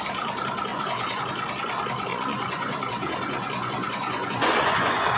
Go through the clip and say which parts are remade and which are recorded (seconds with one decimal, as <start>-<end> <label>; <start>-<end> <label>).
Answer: 0.0-0.7 recorded; 0.7-1.2 remade; 1.2-2.1 recorded; 2.1-5.2 remade